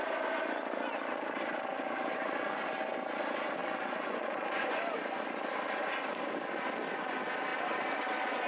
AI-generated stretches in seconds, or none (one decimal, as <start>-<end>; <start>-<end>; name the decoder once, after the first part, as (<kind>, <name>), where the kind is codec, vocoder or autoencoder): 3.6-4.8 (vocoder, Vocos)